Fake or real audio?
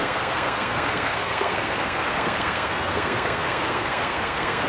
fake